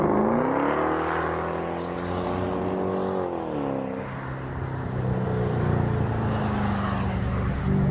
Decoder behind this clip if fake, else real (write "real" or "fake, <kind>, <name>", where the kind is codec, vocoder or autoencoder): real